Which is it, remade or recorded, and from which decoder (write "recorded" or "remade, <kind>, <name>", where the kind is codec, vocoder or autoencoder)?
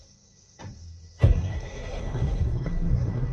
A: remade, codec, SNAC